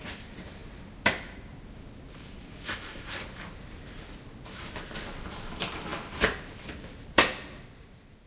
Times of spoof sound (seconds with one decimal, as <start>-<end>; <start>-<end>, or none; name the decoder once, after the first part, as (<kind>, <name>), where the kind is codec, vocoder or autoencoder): none

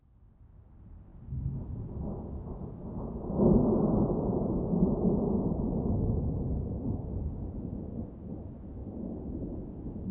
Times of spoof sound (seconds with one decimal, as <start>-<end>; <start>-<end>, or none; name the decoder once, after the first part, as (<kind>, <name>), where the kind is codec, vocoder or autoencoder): 8.8-9.7 (vocoder, BigVGAN v2)

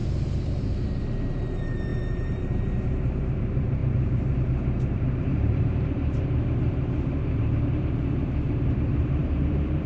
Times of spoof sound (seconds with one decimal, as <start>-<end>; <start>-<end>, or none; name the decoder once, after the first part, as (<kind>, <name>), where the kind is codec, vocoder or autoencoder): 0.0-9.9 (vocoder, BigVGAN v2)

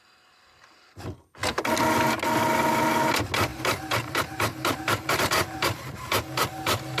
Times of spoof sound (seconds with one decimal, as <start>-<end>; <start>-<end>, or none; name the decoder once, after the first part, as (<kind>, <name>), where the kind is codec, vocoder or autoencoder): 3.5-6.2 (vocoder, BigVGAN v2)